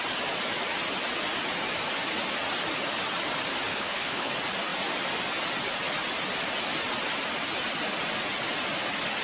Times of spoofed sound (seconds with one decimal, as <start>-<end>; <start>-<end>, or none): 3.7-4.3